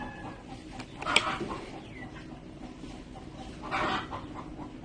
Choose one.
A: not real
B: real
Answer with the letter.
B